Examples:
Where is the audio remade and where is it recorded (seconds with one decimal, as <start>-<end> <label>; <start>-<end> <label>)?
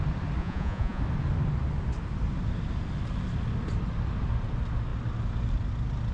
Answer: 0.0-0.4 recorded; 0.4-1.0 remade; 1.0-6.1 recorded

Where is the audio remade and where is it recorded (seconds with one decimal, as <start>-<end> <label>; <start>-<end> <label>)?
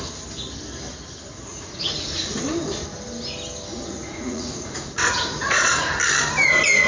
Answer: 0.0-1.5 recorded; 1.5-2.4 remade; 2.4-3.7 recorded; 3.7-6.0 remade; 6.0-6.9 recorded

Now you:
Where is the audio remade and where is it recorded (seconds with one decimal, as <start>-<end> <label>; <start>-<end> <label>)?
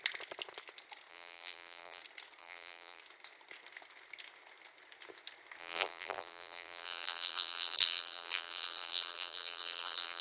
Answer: 0.0-1.1 recorded; 1.1-2.0 remade; 2.0-2.4 recorded; 2.4-3.0 remade; 3.0-5.6 recorded; 5.6-10.2 remade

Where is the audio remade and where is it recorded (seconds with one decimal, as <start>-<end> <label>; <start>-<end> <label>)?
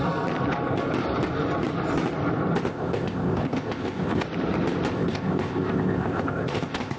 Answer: 0.0-2.7 recorded; 2.7-4.2 remade; 4.2-4.9 recorded; 4.9-7.0 remade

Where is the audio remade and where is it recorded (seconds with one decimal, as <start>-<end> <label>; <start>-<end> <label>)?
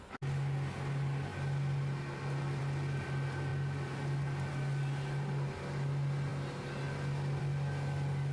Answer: 0.0-8.3 recorded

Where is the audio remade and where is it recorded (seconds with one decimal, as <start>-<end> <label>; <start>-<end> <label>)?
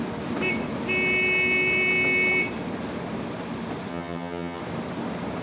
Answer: 0.0-3.9 recorded; 3.9-4.6 remade; 4.6-5.4 recorded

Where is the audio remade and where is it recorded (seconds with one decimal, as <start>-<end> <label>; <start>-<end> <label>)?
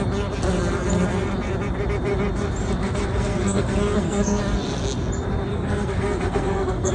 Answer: 0.0-2.8 recorded; 2.8-4.4 remade; 4.4-5.5 recorded; 5.5-6.9 remade